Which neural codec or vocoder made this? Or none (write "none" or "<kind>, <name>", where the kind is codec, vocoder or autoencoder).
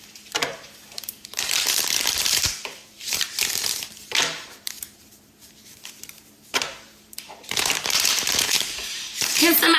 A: vocoder, BigVGAN v2